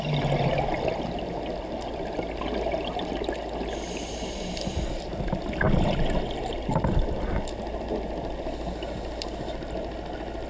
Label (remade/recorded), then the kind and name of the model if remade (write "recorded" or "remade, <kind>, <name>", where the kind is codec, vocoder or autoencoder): recorded